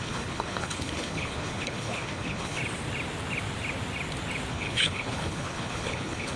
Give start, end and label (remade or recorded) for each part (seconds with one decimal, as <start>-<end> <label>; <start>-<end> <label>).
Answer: 0.0-2.6 remade; 2.6-4.5 recorded; 4.5-6.4 remade